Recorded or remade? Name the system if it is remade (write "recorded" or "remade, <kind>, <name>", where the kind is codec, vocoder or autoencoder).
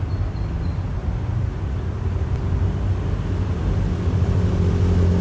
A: recorded